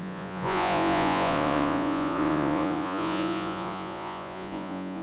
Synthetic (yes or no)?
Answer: yes